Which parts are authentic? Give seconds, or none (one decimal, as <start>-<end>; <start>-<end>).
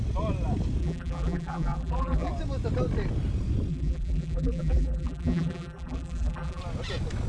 0.0-0.8; 2.3-3.7; 6.6-7.3